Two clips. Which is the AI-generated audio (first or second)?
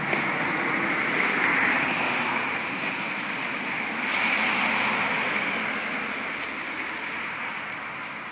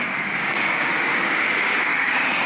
second